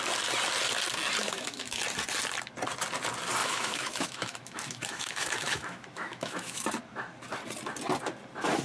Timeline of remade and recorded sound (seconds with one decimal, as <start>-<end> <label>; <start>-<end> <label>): 0.0-1.2 recorded; 1.2-1.8 remade; 1.8-3.4 recorded; 3.4-6.7 remade; 6.7-8.6 recorded